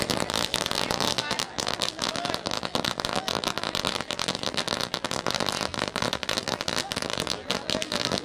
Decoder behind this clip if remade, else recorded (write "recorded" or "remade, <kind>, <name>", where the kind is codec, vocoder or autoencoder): remade, vocoder, BigVGAN v2